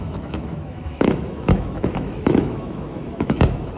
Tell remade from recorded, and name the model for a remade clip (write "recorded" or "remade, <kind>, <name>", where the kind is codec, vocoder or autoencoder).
remade, autoencoder, DAC-VAE